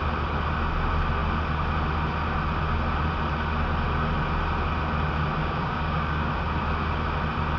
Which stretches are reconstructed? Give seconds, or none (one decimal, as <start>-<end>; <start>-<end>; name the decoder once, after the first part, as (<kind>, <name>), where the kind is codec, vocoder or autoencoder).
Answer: 5.4-6.3 (codec, DAC)